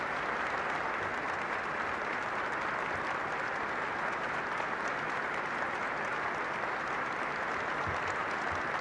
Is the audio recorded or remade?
recorded